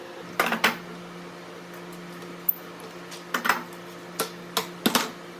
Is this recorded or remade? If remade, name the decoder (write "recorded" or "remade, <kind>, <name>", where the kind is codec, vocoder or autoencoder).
recorded